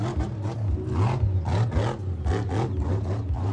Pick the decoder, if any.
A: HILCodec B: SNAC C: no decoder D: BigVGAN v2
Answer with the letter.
C